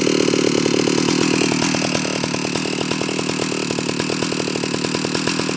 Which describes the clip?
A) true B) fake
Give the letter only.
A